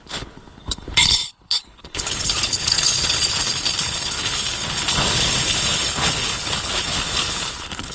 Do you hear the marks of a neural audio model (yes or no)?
yes